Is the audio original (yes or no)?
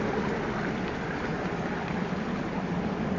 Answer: no